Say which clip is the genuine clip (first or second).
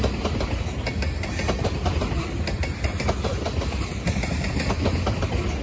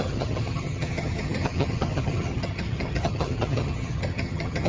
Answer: first